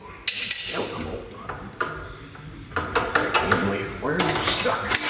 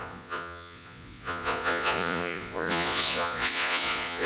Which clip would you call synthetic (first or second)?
second